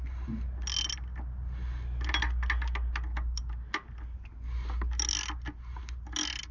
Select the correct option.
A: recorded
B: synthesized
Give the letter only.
A